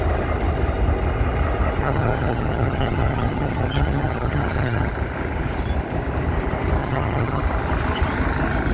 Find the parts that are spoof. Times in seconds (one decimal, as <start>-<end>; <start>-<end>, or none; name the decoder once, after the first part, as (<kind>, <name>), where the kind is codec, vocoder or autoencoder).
1.8-4.9 (vocoder, HiFi-GAN); 6.8-7.4